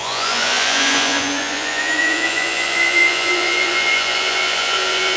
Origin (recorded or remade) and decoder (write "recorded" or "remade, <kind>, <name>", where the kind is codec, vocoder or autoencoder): remade, vocoder, Vocos